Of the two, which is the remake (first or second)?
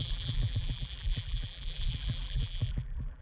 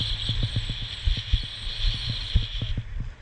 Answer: first